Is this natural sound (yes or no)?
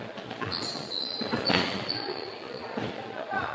no